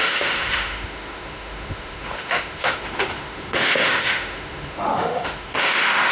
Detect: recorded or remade remade